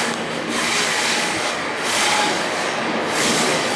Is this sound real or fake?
fake